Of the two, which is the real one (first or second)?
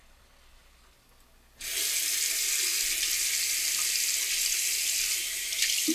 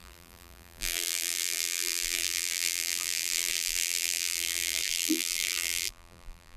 first